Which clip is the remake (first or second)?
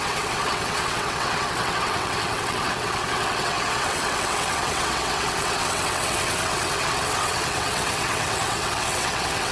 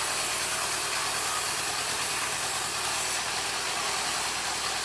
first